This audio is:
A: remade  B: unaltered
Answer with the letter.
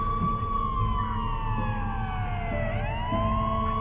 B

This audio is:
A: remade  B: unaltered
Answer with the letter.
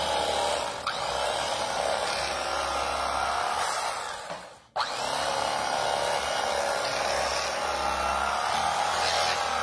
B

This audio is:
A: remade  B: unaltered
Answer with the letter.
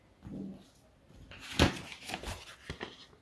B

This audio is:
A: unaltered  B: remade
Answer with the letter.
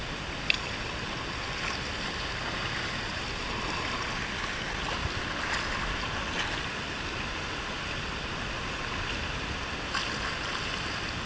A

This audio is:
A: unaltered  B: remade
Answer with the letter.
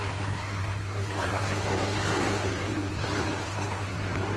B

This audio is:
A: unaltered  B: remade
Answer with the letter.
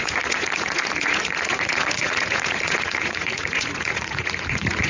B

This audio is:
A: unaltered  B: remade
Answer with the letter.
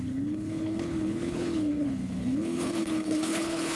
B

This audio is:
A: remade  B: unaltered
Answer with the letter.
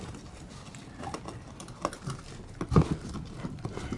B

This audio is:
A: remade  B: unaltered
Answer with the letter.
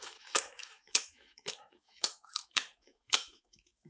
A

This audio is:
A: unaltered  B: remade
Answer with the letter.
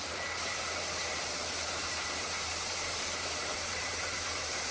B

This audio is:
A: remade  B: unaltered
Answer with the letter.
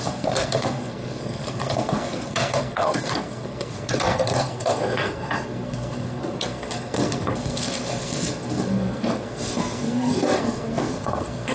A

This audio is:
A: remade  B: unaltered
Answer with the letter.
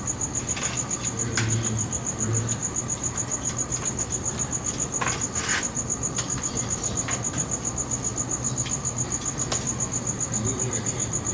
B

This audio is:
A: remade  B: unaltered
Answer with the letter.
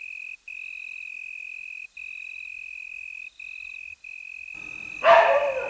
B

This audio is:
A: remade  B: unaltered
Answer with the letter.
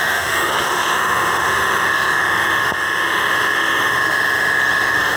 A